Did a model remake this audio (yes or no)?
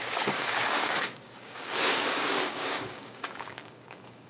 yes